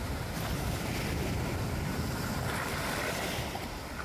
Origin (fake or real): real